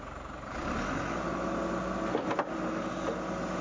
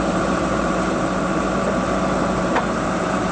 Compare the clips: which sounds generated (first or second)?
second